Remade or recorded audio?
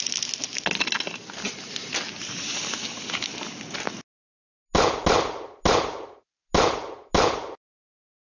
recorded